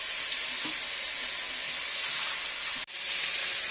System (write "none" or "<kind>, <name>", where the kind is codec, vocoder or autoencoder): none